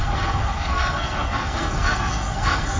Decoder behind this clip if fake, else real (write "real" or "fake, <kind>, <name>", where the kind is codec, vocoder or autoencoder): fake, codec, SNAC